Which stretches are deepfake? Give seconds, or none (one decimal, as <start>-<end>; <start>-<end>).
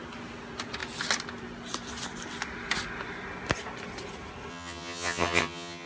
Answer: 4.5-5.9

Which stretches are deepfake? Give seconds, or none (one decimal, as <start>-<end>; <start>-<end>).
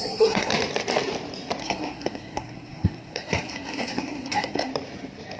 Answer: 0.0-0.5; 1.6-4.7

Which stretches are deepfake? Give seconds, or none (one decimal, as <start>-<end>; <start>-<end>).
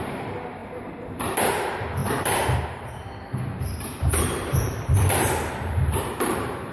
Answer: 0.0-2.0; 3.5-6.7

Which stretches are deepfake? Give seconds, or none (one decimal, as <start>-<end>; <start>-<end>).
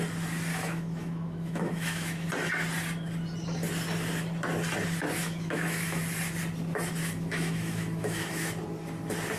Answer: 0.5-2.3; 5.2-6.0; 7.0-8.5